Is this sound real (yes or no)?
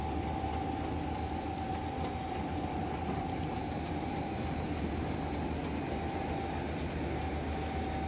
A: yes